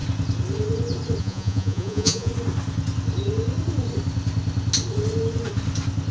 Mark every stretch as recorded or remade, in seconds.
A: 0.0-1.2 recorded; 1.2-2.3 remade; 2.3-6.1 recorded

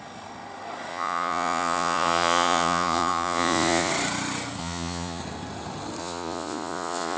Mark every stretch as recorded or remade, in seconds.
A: 0.0-0.9 recorded; 0.9-3.9 remade; 3.9-4.6 recorded; 4.6-5.2 remade; 5.2-6.0 recorded; 6.0-7.2 remade

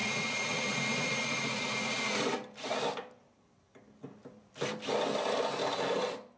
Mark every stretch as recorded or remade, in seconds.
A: 0.0-2.1 remade; 2.1-6.4 recorded

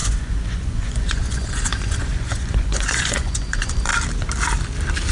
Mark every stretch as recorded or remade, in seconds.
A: 0.0-3.9 remade; 3.9-5.1 recorded

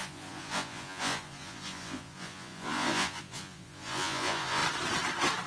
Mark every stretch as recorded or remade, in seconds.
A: 0.0-4.6 remade; 4.6-5.5 recorded